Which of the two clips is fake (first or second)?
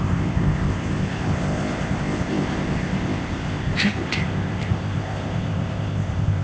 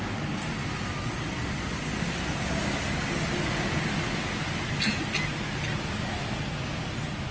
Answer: first